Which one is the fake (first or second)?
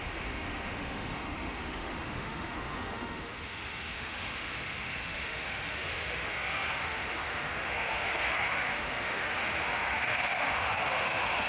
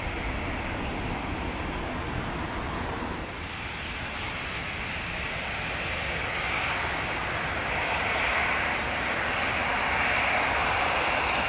first